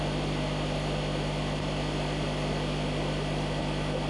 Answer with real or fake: real